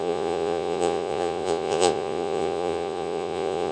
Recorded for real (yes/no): no